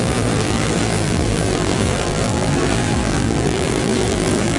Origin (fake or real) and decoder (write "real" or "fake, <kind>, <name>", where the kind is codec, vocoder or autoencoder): fake, vocoder, BigVGAN v2